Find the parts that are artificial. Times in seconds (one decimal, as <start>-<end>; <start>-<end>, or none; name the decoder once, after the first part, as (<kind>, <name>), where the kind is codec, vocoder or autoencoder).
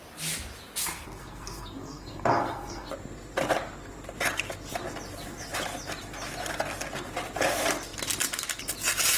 0.8-2.9 (codec, SNAC)